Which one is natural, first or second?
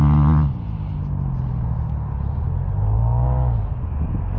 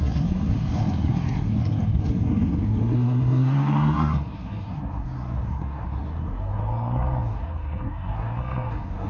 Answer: first